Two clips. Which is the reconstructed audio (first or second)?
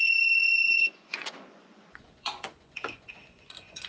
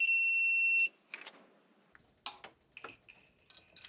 first